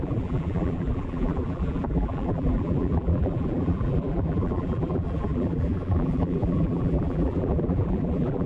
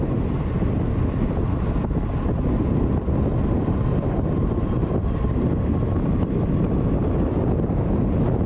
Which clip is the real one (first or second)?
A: second